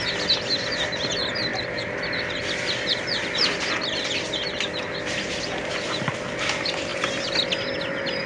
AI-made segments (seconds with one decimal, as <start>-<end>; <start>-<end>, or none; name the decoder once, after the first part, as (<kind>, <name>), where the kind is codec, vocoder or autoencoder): 1.5-6.1 (vocoder, BigVGAN v2)